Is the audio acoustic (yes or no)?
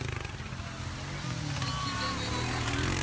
yes